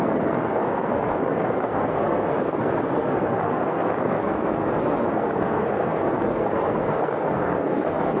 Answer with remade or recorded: remade